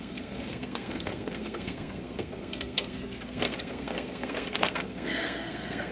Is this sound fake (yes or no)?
yes